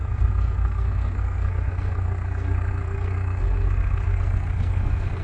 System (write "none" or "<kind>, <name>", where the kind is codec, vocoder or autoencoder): codec, SNAC